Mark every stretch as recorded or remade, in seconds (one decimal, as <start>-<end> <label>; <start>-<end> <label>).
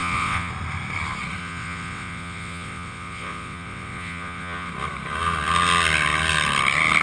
0.0-0.5 remade; 0.5-1.4 recorded; 1.4-4.7 remade; 4.7-7.0 recorded